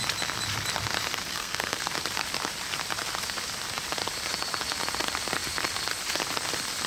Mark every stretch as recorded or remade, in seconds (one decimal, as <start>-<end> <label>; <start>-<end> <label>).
0.0-1.3 recorded; 1.3-1.9 remade; 1.9-6.9 recorded